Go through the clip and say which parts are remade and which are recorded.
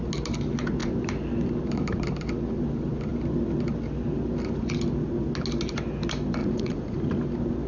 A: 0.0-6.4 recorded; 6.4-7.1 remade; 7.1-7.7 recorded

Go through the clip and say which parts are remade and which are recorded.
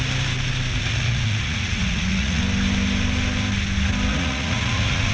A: 0.0-0.7 recorded; 0.7-2.4 remade; 2.4-4.1 recorded; 4.1-5.1 remade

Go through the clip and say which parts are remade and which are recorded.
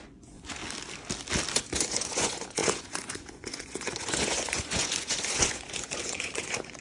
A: 0.0-0.6 remade; 0.6-1.5 recorded; 1.5-6.8 remade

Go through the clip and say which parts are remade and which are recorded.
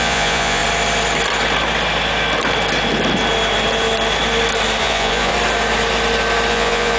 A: 0.0-0.6 remade; 0.6-4.8 recorded; 4.8-5.3 remade; 5.3-6.5 recorded; 6.5-7.0 remade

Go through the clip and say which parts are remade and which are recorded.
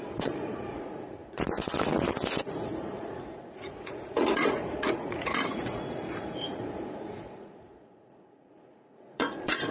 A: 0.0-9.7 remade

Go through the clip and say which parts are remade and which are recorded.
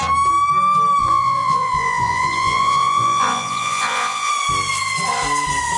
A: 0.0-1.0 recorded; 1.0-4.3 remade; 4.3-5.8 recorded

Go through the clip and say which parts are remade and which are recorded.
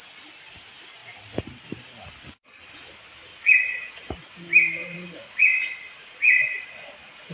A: 0.0-3.3 recorded; 3.3-4.1 remade; 4.1-4.8 recorded; 4.8-7.3 remade